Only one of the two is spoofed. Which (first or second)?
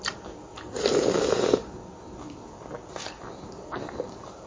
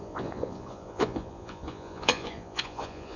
second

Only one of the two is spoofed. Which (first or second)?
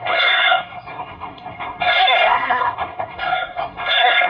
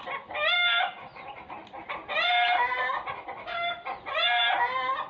first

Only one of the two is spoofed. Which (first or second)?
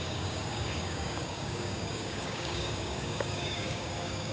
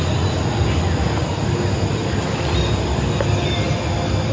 first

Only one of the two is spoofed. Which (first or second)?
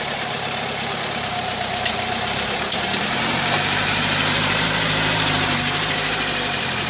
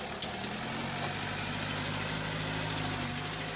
first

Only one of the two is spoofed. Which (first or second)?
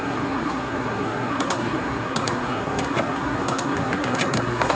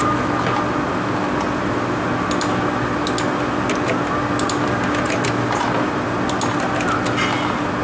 first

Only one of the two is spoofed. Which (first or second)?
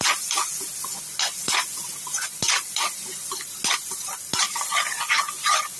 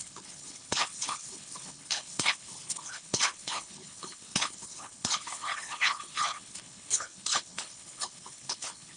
second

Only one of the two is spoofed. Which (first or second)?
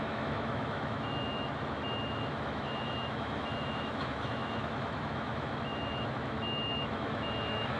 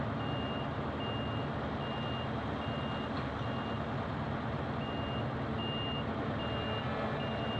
first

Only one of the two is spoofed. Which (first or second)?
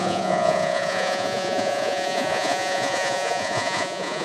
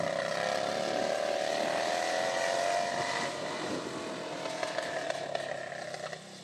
first